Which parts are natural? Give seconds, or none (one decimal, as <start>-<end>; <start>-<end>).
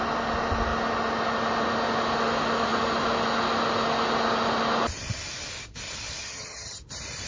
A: 0.0-6.2; 6.8-7.3